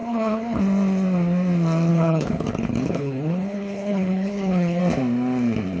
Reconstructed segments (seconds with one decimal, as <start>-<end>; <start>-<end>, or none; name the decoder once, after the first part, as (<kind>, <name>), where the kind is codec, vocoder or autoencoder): 0.0-0.6 (codec, HILCodec); 1.9-4.8

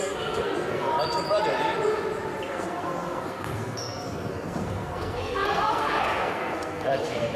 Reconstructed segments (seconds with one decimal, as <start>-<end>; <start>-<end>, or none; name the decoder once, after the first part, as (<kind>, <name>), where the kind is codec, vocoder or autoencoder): 0.0-0.9 (codec, SNAC); 2.5-7.4

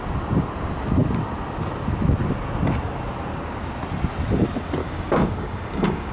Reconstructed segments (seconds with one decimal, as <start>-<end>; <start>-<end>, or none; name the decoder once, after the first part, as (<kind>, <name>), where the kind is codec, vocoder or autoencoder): 4.8-6.1 (codec, DAC)

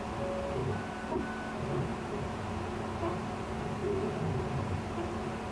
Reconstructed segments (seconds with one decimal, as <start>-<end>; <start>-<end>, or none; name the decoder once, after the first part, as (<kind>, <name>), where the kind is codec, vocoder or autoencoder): 0.6-1.2 (vocoder, BigVGAN v2); 1.9-2.5

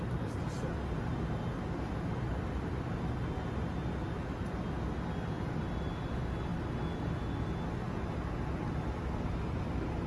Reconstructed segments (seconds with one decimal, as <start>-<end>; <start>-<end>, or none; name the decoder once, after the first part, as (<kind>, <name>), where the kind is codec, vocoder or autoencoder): none

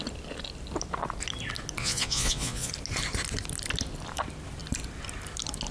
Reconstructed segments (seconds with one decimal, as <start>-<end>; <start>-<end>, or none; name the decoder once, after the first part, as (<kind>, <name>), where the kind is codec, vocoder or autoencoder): 1.8-2.7 (vocoder, Vocos)

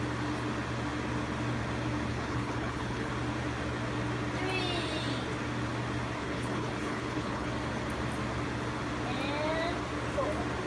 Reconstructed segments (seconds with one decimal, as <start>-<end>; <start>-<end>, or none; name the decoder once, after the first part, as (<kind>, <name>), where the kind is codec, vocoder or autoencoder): 2.1-3.1 (codec, HILCodec); 6.2-7.5

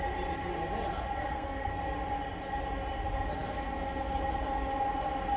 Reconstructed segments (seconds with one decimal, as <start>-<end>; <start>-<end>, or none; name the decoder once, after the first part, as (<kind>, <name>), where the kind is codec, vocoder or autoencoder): 1.3-1.8 (codec, SNAC)